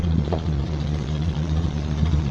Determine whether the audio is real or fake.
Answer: fake